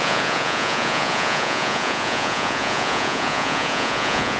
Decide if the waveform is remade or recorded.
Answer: remade